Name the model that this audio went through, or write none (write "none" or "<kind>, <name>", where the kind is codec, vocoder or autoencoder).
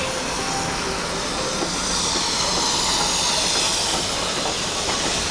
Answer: none